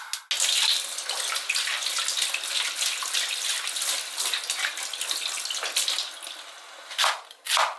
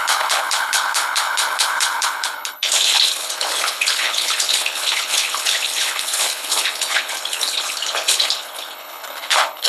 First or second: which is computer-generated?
second